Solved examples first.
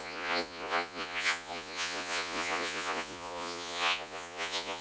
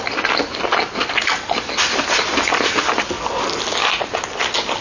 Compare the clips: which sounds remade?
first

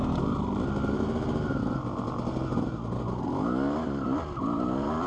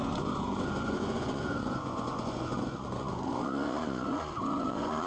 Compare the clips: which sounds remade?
second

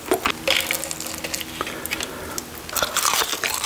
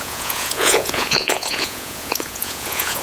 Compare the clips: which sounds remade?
second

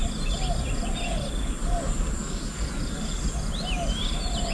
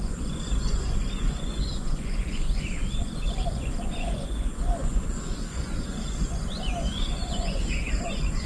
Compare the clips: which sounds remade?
second